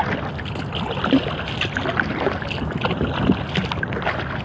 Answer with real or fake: real